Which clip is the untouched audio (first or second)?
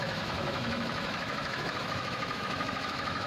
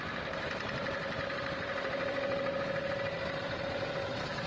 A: second